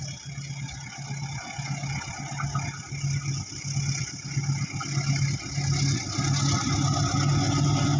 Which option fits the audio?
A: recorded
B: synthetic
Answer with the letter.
A